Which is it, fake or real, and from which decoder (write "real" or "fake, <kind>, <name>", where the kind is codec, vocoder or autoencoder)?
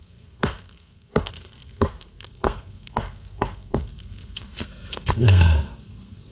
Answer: fake, codec, SNAC